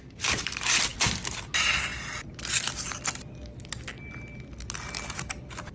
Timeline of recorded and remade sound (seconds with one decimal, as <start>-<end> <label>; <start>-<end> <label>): 0.0-5.7 recorded